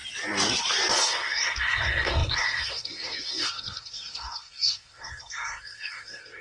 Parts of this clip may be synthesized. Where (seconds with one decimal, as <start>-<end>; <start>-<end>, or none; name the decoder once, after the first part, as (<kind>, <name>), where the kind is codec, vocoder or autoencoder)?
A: 0.9-6.4 (codec, SNAC)